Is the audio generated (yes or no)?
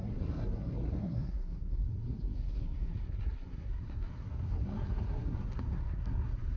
yes